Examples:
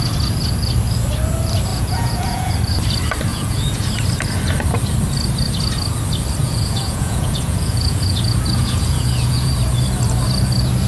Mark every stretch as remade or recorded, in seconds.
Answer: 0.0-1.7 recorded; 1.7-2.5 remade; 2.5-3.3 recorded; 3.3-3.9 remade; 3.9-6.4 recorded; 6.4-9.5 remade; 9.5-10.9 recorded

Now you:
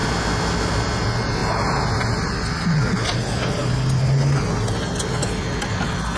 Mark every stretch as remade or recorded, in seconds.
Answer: 0.0-6.2 recorded

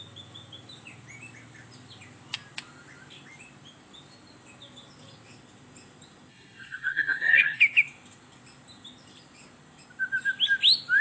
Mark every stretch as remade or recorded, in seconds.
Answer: 0.0-6.3 recorded; 6.3-7.6 remade; 7.6-11.0 recorded

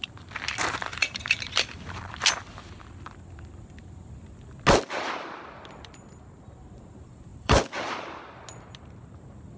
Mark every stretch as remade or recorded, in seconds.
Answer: 0.0-0.9 recorded; 0.9-1.5 remade; 1.5-7.3 recorded; 7.3-8.2 remade; 8.2-9.6 recorded

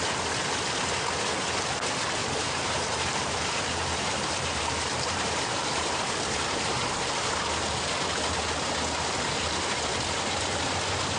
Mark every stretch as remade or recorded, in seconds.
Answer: 0.0-2.2 recorded; 2.2-7.3 remade; 7.3-11.2 recorded